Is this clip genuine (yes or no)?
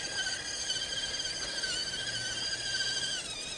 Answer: yes